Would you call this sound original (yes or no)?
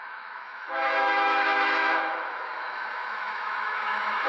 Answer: no